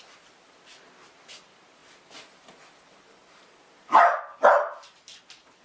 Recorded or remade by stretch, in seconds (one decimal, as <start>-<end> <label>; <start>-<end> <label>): 0.0-1.8 recorded; 1.8-4.2 remade; 4.2-5.6 recorded